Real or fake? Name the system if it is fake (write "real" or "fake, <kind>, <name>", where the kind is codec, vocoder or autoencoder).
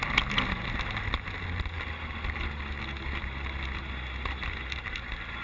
real